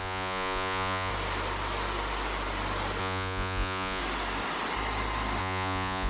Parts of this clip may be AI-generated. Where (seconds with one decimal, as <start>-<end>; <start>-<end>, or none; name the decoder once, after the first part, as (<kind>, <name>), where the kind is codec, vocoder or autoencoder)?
0.0-1.1 (vocoder, Vocos); 3.0-4.0; 5.4-6.1